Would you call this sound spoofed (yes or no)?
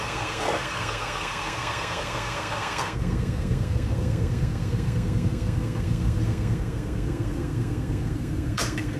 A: yes